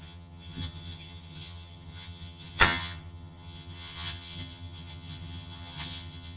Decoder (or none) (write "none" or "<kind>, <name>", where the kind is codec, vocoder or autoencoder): vocoder, HiFi-GAN